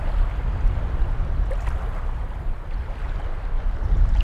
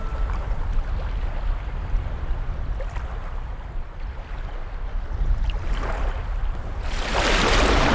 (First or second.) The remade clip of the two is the second